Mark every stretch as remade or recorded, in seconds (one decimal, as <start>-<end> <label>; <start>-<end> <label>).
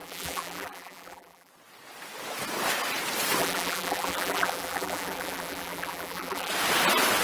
0.0-1.5 remade; 1.5-3.4 recorded; 3.4-6.5 remade; 6.5-7.2 recorded